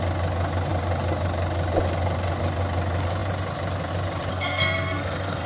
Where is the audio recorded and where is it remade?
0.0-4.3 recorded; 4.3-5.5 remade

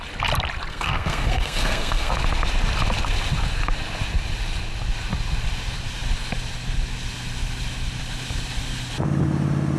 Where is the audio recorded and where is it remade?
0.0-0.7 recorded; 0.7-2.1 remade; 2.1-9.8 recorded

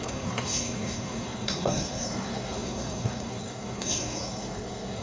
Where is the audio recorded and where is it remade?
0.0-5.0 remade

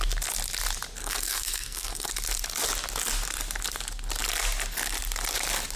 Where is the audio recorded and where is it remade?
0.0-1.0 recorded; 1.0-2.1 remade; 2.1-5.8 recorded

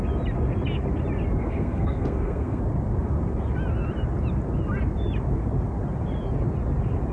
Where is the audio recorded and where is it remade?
0.0-1.4 recorded; 1.4-2.6 remade; 2.6-7.1 recorded

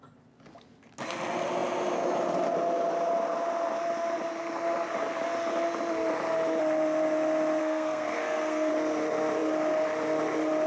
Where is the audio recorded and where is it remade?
0.0-7.6 recorded; 7.6-8.7 remade; 8.7-10.7 recorded